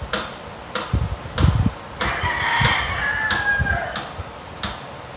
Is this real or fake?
real